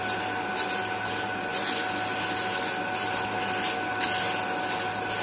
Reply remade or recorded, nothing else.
recorded